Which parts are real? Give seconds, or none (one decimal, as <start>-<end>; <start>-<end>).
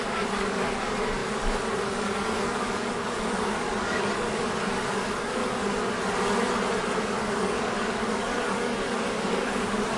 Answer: 5.4-7.0